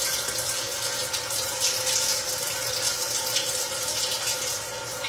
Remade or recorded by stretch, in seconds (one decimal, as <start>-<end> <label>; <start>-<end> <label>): 0.0-5.1 recorded